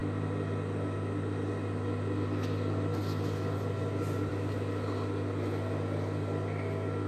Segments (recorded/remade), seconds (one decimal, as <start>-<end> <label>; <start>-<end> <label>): 0.0-7.1 recorded